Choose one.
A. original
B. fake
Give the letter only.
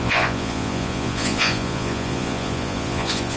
B